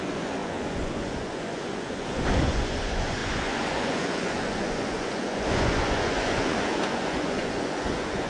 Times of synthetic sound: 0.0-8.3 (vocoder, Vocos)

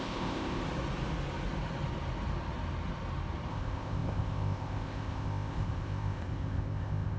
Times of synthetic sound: 0.0-0.6 (codec, ZipCodec); 3.5-7.2

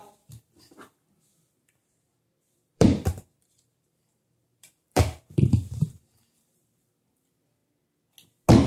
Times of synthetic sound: 1.8-6.9 (vocoder, BigVGAN v2)